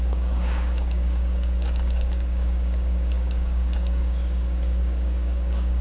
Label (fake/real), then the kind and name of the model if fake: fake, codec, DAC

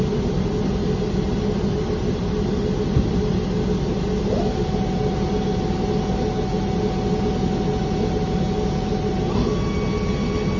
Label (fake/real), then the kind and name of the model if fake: real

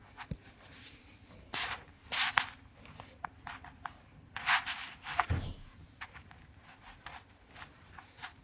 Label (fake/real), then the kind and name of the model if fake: fake, vocoder, BigVGAN v2